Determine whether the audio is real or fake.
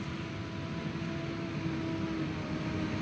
real